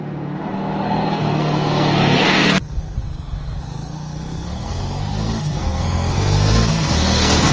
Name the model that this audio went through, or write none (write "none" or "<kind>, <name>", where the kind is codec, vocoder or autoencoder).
codec, SNAC